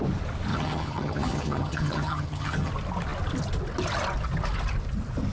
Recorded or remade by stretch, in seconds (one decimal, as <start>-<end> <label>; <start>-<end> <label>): 0.0-0.5 recorded; 0.5-2.7 remade; 2.7-5.3 recorded